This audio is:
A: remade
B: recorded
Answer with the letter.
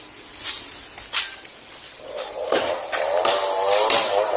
B